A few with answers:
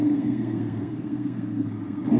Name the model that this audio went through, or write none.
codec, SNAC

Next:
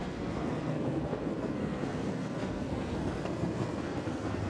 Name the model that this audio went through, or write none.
codec, SNAC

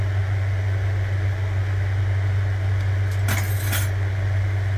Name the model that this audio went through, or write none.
none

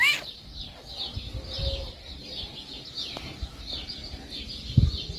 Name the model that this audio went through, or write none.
none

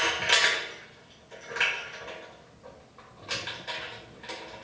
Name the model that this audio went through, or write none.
none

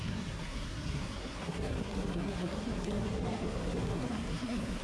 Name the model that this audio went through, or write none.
codec, SNAC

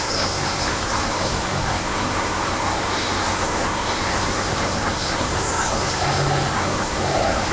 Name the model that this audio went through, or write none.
codec, SNAC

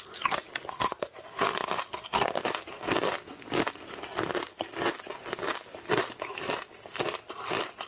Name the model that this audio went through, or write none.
none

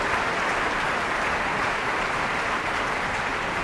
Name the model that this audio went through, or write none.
none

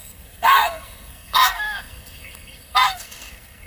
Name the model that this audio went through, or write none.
codec, SNAC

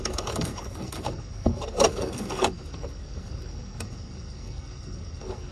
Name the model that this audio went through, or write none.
codec, SNAC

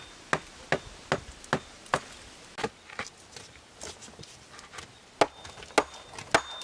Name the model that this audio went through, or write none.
none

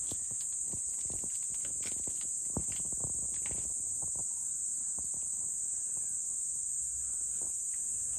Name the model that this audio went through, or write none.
none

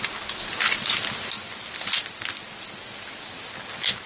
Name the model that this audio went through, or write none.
none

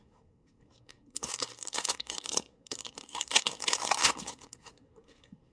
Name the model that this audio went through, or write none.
codec, SNAC